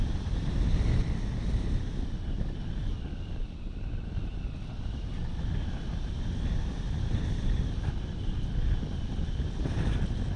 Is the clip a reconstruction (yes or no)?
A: no